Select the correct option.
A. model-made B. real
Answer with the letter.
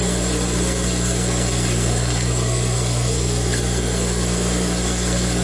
A